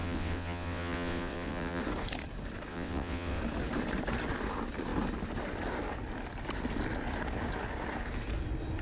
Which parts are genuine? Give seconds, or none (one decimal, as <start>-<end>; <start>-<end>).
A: 1.8-2.7; 3.4-8.8